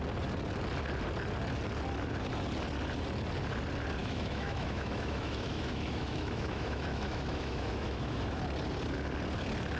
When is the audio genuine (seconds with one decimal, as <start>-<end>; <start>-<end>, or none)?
0.0-4.0; 8.4-9.8